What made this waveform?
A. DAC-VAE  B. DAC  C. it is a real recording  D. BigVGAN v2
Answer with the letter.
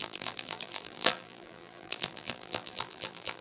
D